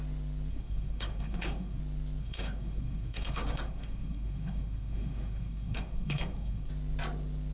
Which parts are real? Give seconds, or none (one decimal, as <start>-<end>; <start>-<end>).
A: 0.0-0.5; 1.8-2.2; 6.7-7.5